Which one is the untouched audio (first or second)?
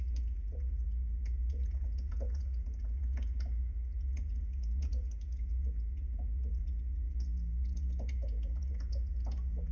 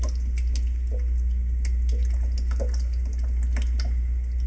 second